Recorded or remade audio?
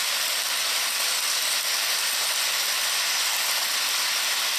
recorded